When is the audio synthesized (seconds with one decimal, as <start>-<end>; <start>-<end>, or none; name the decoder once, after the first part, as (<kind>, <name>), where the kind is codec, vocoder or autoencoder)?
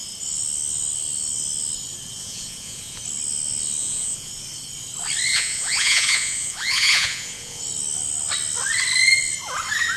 2.2-3.0 (vocoder, Vocos); 3.8-4.3; 5.3-7.6